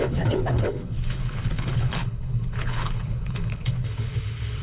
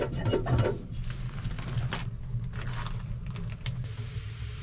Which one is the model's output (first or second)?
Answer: first